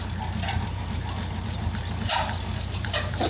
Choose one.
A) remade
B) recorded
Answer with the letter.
B